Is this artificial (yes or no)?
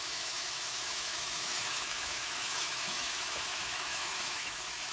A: yes